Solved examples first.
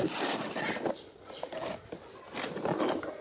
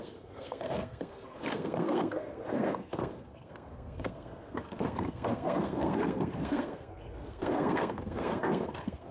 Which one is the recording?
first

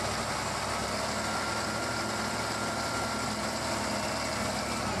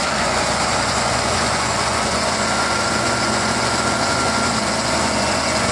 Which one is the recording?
first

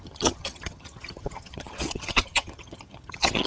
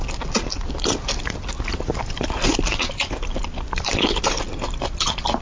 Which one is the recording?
second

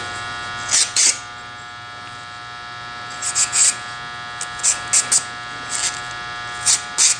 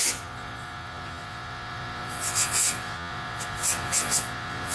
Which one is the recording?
first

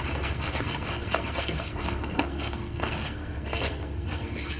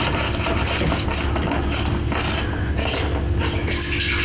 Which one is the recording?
second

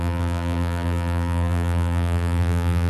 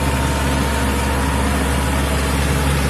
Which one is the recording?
second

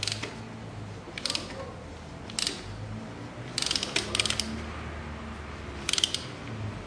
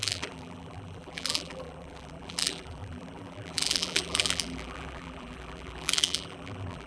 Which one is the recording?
first